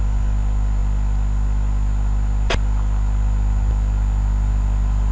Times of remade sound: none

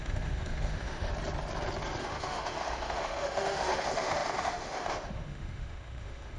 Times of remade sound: 0.0-1.1 (autoencoder, DAC-VAE); 2.0-6.4

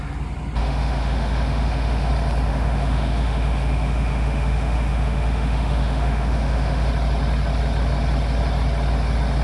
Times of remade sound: 0.6-2.1 (autoencoder, DAC-VAE); 2.5-6.9

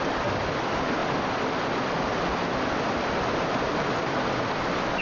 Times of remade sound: none

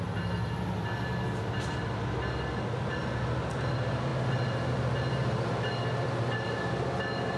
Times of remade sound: none

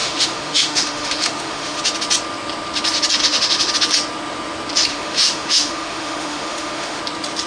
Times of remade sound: 0.0-1.8 (autoencoder, DAC-VAE); 3.2-3.7; 4.9-7.0

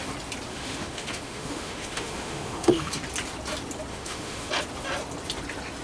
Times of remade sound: 0.5-2.9 (autoencoder, DAC-VAE); 3.9-4.5

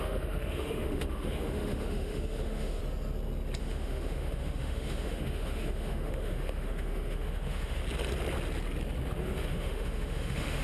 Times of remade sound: 0.0-2.8 (autoencoder, DAC-VAE); 3.6-7.8; 9.2-10.6